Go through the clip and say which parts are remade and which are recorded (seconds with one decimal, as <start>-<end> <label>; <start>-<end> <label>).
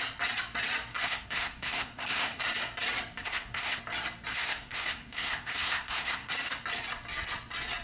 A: 0.0-0.9 recorded; 0.9-2.4 remade; 2.4-3.2 recorded; 3.2-3.8 remade; 3.8-4.3 recorded; 4.3-6.3 remade; 6.3-7.8 recorded